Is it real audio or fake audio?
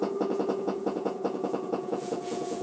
fake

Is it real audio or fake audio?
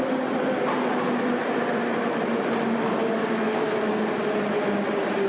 real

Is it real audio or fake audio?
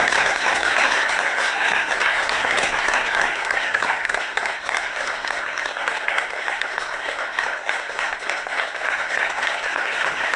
fake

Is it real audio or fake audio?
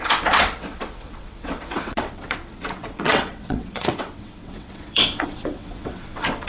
fake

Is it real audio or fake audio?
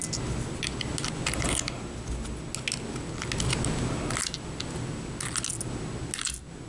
real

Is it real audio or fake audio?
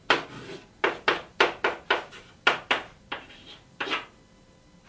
real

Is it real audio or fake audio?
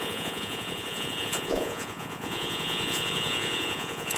fake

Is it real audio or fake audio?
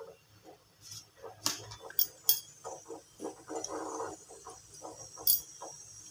real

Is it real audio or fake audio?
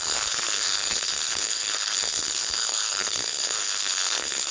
fake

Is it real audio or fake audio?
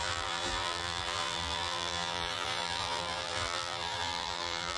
fake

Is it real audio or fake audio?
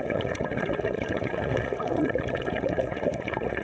fake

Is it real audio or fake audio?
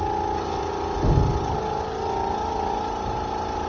real